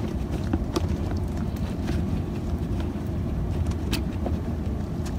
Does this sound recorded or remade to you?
remade